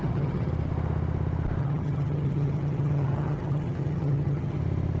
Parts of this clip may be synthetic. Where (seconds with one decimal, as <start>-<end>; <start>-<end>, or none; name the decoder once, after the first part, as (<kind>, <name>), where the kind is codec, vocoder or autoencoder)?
0.0-0.5 (vocoder, HiFi-GAN); 1.6-4.6